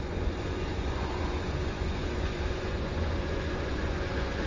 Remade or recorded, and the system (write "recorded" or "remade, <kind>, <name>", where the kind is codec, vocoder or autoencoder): remade, vocoder, Vocos